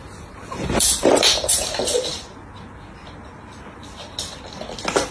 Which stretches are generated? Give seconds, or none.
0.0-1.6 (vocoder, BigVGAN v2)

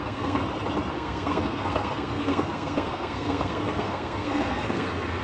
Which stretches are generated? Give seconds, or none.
0.0-0.4 (codec, SNAC); 0.9-5.2

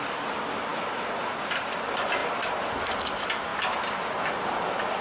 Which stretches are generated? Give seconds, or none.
0.0-3.5 (vocoder, BigVGAN v2); 4.6-5.0